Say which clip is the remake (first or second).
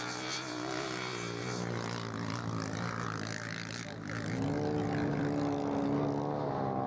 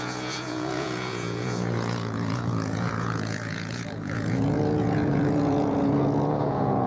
second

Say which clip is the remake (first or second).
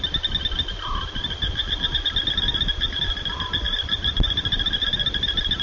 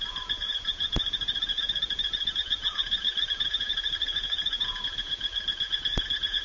second